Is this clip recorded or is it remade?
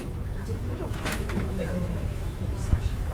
remade